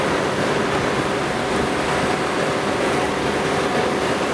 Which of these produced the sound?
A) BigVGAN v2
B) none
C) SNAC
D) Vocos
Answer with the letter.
A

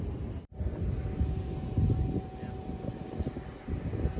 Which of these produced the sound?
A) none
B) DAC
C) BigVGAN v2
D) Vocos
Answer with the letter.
A